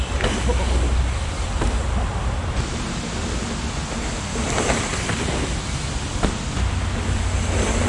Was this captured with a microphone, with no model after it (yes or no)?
yes